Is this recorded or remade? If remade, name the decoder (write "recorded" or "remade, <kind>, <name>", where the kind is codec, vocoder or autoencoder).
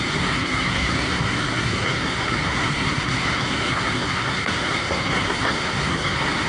remade, codec, SNAC